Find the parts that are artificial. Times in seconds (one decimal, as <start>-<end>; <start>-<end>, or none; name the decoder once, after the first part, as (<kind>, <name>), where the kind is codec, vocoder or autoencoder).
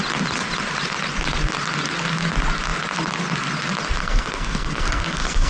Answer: 4.0-5.5 (codec, SNAC)